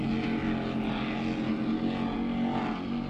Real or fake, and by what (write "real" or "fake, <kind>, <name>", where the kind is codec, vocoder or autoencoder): real